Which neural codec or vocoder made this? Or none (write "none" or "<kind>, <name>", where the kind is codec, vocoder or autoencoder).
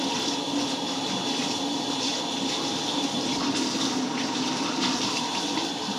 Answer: none